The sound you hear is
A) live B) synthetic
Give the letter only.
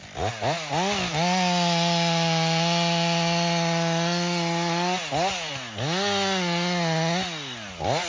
A